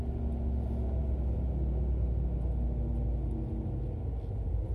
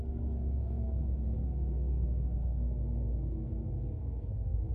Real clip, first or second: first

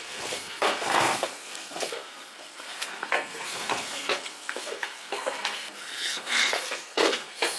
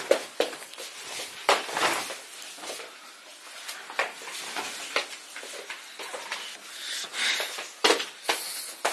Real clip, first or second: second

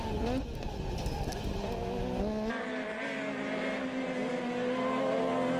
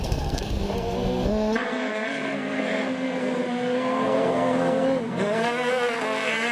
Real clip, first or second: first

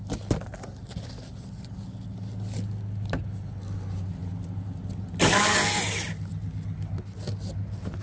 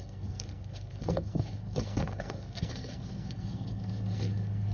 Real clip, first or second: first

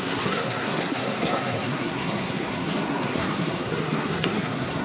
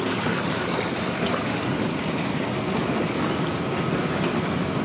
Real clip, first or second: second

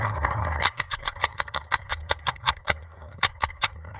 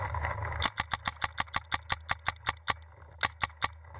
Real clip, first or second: second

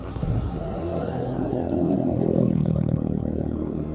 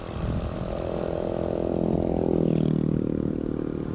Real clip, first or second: second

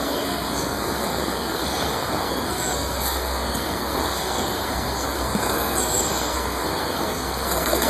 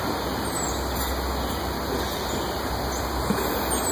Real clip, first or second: second